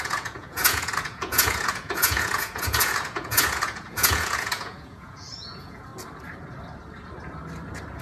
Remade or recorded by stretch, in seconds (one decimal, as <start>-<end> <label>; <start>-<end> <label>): 0.0-5.9 remade; 5.9-8.0 recorded